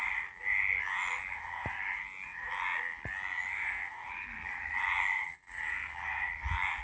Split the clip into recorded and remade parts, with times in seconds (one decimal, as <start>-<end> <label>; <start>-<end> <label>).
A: 0.0-6.8 recorded